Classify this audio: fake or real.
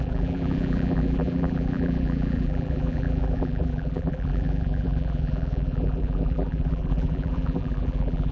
fake